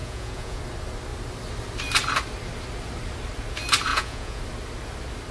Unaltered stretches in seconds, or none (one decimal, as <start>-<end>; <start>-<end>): 0.6-3.9; 4.4-5.3